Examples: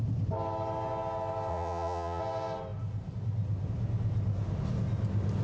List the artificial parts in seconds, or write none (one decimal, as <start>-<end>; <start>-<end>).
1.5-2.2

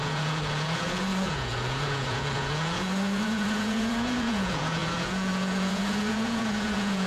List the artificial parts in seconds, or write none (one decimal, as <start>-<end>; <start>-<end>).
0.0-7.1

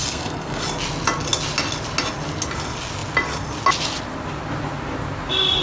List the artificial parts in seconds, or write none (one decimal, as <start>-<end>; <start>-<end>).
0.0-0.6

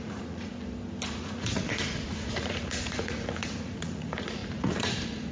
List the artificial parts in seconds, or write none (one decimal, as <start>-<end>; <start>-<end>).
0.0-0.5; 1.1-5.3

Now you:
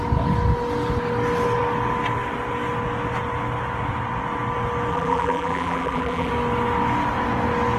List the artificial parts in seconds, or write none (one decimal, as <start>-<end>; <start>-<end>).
4.9-6.3